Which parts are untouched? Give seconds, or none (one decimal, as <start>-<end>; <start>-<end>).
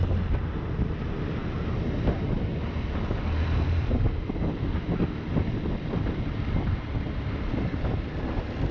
0.0-8.7